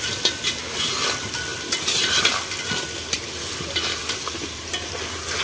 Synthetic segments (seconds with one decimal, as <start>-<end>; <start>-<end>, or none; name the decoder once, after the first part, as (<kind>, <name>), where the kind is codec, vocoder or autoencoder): 1.5-2.2 (vocoder, BigVGAN v2); 4.0-4.9